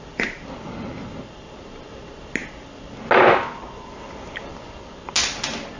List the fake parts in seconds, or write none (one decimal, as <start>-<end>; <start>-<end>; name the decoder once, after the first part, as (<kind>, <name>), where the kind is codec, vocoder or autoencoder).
none